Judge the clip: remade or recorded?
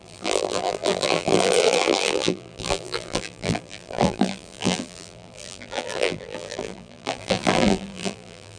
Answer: remade